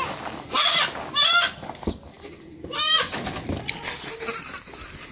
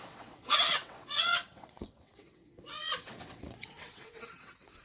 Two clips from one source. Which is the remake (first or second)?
second